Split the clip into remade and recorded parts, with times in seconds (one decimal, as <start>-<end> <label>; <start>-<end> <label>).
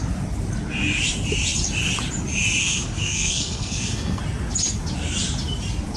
0.0-2.6 recorded; 2.6-4.2 remade; 4.2-6.0 recorded